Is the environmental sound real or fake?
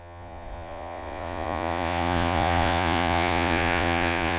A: fake